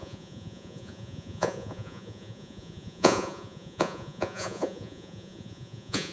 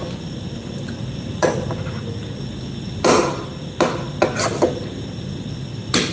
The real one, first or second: second